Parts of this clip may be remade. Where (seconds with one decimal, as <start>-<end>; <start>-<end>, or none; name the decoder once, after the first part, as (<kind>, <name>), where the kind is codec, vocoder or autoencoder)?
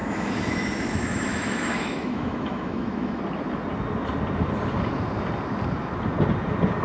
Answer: 0.0-3.2 (autoencoder, DAC-VAE)